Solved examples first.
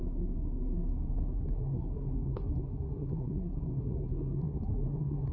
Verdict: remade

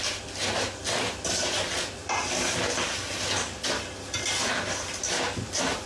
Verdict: recorded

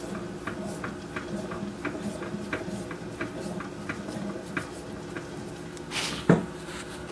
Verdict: recorded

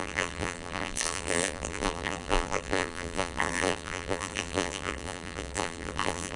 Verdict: remade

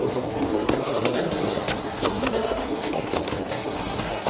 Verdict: remade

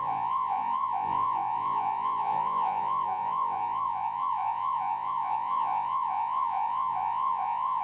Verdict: remade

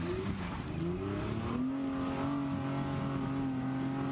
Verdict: recorded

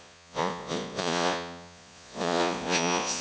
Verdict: remade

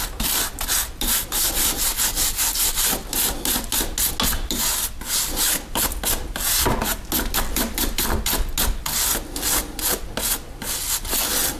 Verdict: recorded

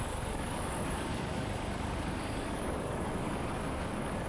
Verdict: remade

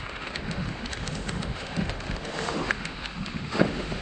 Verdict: remade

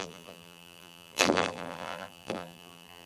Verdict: remade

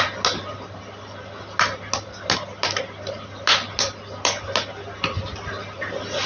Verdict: recorded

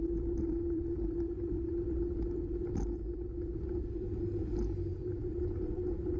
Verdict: remade